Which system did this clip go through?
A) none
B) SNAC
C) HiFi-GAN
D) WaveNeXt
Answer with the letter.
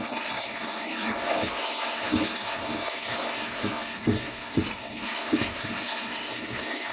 B